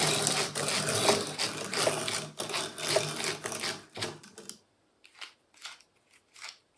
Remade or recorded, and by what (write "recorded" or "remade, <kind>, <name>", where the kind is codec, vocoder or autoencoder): recorded